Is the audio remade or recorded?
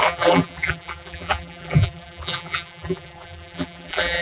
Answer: remade